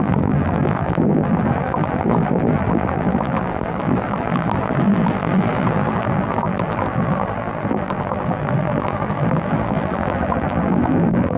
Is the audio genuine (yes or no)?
no